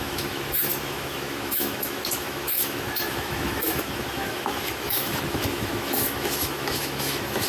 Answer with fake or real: fake